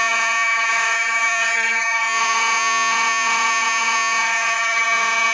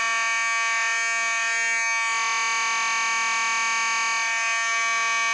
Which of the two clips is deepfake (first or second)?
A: first